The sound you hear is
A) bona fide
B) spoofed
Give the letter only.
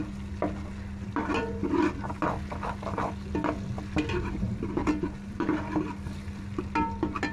A